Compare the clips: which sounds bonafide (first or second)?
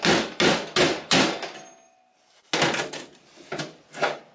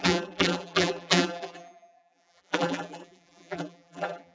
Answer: first